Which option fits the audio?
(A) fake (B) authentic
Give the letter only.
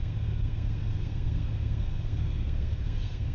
A